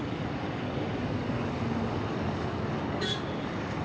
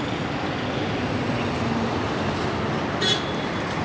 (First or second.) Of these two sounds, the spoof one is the first